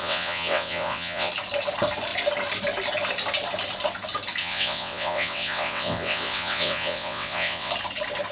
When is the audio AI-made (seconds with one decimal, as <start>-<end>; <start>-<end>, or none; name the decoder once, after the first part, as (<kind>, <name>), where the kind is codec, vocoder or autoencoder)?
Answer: 0.0-1.3 (vocoder, WaveNeXt); 4.4-7.7